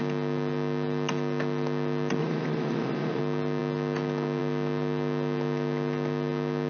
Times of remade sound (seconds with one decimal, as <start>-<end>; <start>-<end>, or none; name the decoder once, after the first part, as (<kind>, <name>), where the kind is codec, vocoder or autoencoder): 2.2-3.2 (vocoder, Vocos)